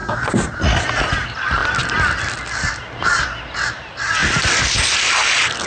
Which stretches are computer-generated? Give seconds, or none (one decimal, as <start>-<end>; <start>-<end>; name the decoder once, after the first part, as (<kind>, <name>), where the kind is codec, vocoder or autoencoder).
none